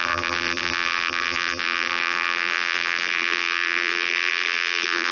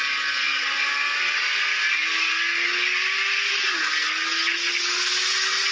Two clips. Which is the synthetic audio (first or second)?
first